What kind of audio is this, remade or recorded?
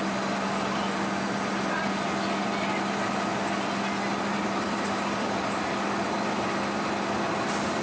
recorded